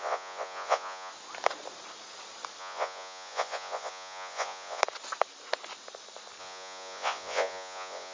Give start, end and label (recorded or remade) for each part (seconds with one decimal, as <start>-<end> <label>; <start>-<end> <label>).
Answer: 0.0-1.1 remade; 1.1-2.6 recorded; 2.6-4.8 remade; 4.8-6.4 recorded; 6.4-8.1 remade